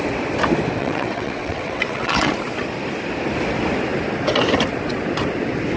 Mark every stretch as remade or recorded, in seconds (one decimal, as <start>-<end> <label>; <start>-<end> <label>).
0.0-0.8 recorded; 0.8-2.3 remade; 2.3-5.8 recorded